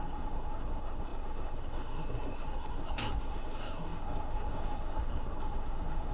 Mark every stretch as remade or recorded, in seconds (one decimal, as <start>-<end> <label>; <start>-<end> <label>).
0.0-6.1 remade